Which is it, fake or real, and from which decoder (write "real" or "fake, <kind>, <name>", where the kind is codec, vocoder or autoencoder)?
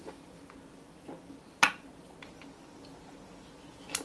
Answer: real